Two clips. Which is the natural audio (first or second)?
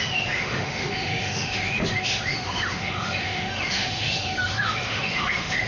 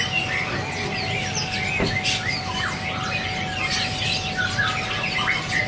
second